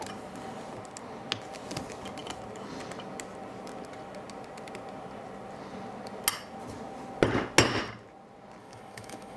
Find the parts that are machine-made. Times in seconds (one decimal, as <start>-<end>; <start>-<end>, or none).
8.6-9.4

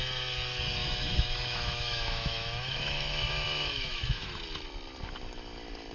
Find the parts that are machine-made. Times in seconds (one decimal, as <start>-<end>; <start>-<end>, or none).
0.8-4.3

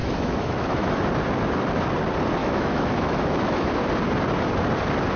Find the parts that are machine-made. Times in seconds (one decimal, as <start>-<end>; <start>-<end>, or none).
0.0-1.0; 2.4-3.7

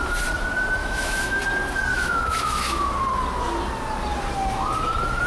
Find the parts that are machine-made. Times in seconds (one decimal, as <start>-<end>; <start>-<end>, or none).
0.8-1.4; 1.9-2.9

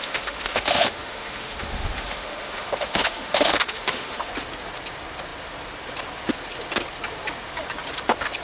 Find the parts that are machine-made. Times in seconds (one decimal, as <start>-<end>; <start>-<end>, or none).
0.0-4.3

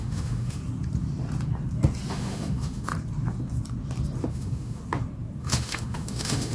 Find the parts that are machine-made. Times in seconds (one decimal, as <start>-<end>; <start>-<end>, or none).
0.0-0.6; 2.1-2.9; 4.3-4.8; 5.4-6.5

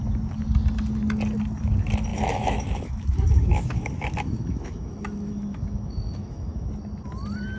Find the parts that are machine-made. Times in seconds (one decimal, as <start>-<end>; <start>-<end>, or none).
2.1-6.7